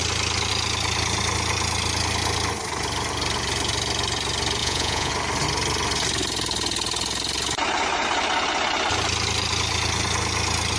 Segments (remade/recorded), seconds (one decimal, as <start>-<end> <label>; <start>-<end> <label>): 0.0-4.6 recorded; 4.6-5.1 remade; 5.1-10.8 recorded